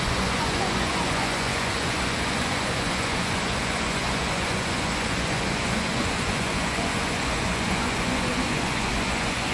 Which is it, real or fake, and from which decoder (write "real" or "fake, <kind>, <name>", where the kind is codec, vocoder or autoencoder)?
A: fake, vocoder, Vocos